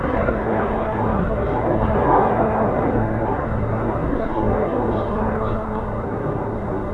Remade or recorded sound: remade